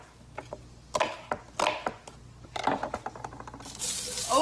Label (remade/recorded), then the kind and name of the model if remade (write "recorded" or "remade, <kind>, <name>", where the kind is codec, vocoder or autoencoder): recorded